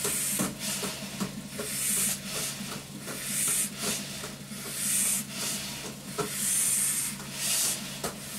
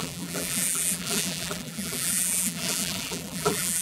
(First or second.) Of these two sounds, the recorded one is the first